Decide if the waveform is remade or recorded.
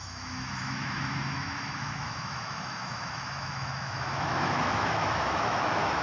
remade